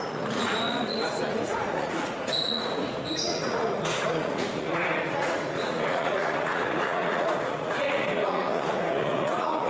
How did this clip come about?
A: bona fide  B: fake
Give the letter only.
B